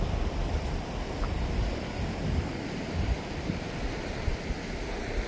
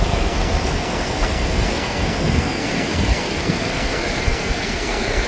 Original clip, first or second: first